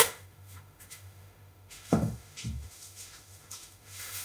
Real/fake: fake